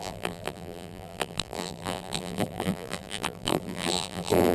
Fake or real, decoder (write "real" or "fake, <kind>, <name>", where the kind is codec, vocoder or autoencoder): fake, vocoder, BigVGAN v2